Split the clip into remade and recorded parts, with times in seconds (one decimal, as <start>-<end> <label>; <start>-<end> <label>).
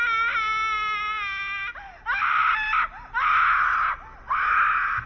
0.0-5.1 recorded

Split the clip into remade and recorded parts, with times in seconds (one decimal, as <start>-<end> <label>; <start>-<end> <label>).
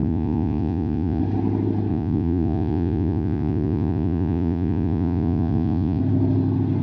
0.0-1.2 remade; 1.2-1.9 recorded; 1.9-6.0 remade; 6.0-6.8 recorded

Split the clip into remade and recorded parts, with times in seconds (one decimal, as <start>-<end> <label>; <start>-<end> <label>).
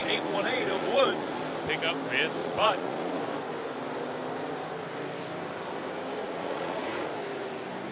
0.0-1.4 remade; 1.4-2.4 recorded; 2.4-3.2 remade; 3.2-6.2 recorded; 6.2-7.1 remade; 7.1-7.9 recorded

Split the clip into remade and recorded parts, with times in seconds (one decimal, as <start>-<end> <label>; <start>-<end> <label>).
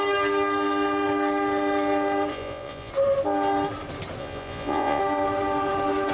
0.0-2.3 recorded; 2.3-2.9 remade; 2.9-4.2 recorded; 4.2-5.0 remade; 5.0-6.1 recorded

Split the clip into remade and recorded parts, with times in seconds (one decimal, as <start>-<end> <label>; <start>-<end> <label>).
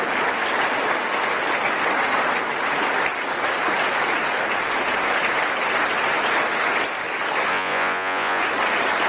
0.0-7.5 recorded; 7.5-8.4 remade; 8.4-9.1 recorded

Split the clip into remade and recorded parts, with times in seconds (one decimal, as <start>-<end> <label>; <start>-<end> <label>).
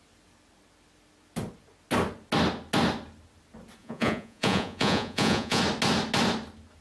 0.0-3.8 recorded; 3.8-5.6 remade; 5.6-6.8 recorded